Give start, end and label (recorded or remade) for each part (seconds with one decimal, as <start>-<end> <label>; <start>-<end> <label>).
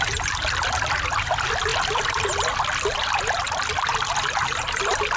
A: 0.0-5.2 recorded